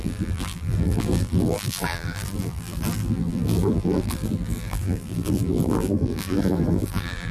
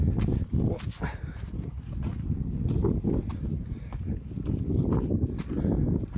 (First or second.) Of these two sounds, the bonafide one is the second